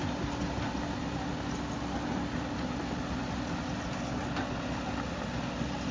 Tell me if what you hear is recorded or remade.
recorded